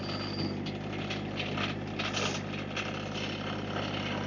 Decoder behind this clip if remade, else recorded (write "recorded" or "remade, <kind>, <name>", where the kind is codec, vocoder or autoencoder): recorded